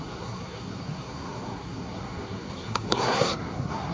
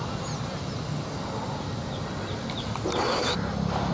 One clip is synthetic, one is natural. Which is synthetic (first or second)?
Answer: first